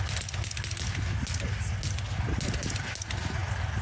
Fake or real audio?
real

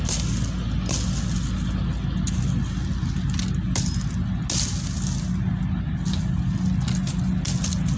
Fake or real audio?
real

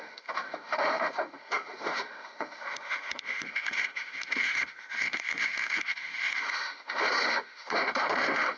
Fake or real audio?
fake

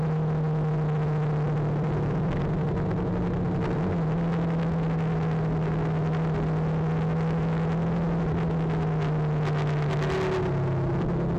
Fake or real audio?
real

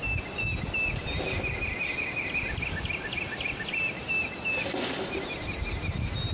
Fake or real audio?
real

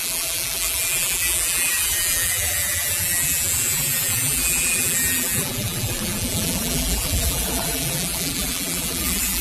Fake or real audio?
fake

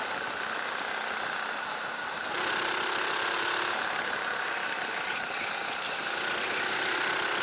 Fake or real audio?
real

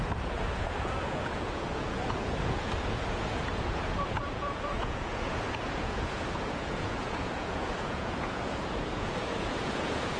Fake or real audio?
fake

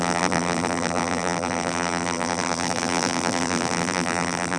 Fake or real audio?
fake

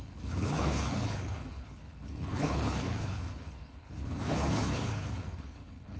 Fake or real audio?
fake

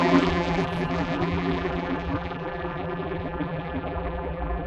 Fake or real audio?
fake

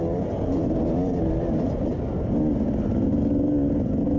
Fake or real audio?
real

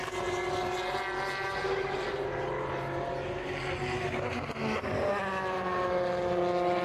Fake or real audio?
real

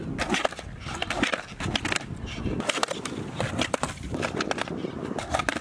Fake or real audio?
real